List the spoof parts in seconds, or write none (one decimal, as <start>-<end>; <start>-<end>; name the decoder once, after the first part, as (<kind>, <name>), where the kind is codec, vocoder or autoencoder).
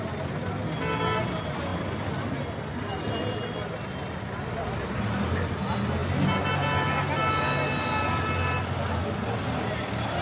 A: none